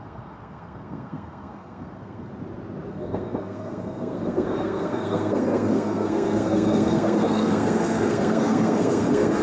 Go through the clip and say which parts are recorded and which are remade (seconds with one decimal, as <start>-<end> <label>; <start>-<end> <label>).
0.0-2.3 remade; 2.3-2.9 recorded; 2.9-9.4 remade